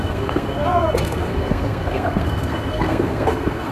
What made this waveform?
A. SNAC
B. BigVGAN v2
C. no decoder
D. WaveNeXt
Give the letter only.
A